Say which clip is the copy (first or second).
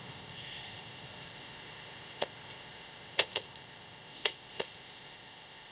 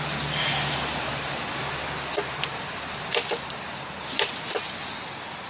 first